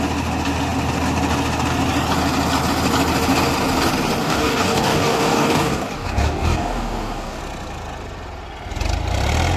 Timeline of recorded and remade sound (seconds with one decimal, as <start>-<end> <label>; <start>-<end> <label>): 0.0-4.2 recorded; 4.2-7.4 remade; 7.4-9.6 recorded

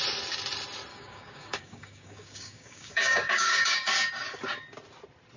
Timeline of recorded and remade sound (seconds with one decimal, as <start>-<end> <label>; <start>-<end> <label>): 0.0-0.9 recorded; 0.9-4.1 remade; 4.1-5.4 recorded

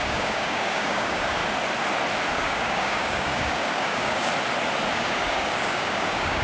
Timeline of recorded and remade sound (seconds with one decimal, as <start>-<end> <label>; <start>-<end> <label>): 0.0-1.4 remade; 1.4-2.3 recorded; 2.3-4.3 remade; 4.3-4.9 recorded; 4.9-6.4 remade

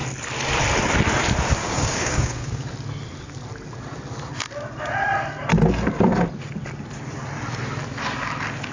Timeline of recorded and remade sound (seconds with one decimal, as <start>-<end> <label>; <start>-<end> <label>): 0.0-1.6 recorded; 1.6-2.7 remade; 2.7-8.7 recorded

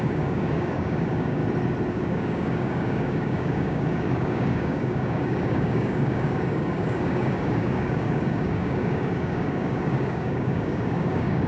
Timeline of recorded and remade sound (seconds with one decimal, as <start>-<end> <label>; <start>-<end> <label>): 0.0-1.4 remade; 1.4-1.9 recorded; 1.9-11.5 remade